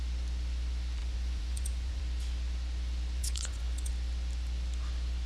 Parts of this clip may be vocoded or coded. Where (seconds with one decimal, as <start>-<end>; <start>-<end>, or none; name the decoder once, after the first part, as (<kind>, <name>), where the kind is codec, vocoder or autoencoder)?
1.0-2.0 (vocoder, Vocos); 3.2-3.9